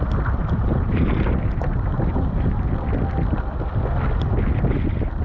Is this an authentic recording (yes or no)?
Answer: yes